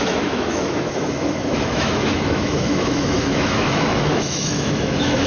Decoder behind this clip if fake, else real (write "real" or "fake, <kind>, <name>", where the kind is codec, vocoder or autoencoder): fake, autoencoder, DAC-VAE